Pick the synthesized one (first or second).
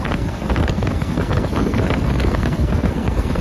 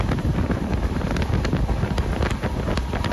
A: first